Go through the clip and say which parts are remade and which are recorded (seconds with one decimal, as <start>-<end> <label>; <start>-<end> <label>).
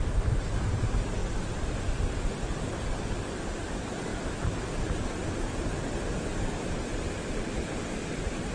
0.0-1.2 recorded; 1.2-3.1 remade; 3.1-4.1 recorded; 4.1-8.1 remade; 8.1-8.5 recorded